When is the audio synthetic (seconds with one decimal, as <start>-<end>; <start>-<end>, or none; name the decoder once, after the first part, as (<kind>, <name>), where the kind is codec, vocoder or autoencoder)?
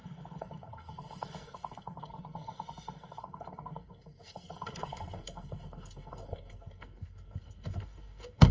0.0-8.5 (codec, SNAC)